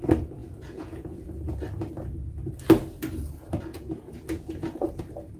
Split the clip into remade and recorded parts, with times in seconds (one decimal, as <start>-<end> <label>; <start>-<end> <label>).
0.0-0.4 recorded; 0.4-1.5 remade; 1.5-3.7 recorded; 3.7-5.0 remade; 5.0-5.4 recorded